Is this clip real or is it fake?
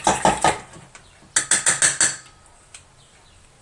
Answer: real